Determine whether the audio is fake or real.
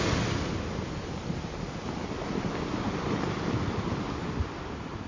real